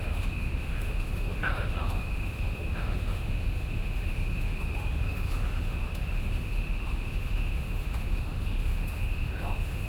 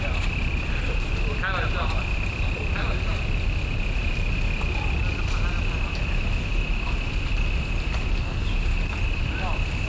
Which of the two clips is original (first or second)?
second